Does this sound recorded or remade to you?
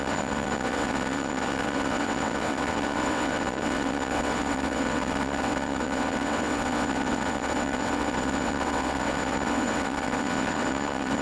remade